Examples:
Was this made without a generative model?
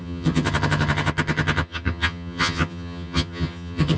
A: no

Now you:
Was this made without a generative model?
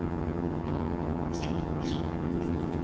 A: no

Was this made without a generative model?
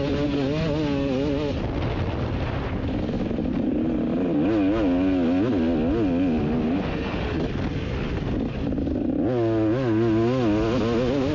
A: yes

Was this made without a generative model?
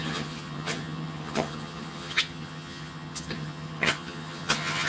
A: no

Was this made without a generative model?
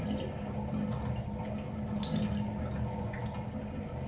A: yes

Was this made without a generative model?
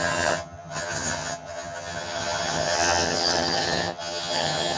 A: no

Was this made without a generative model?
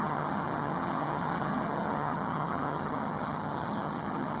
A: no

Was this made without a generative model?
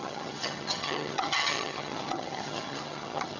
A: no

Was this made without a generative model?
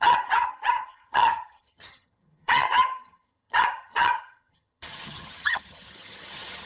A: no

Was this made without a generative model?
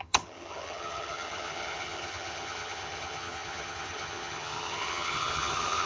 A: no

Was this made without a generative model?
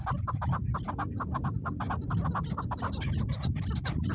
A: yes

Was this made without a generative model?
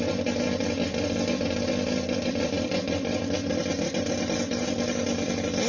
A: yes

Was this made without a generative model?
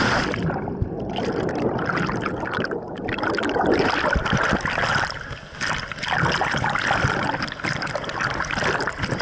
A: yes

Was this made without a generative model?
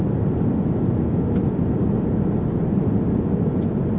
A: yes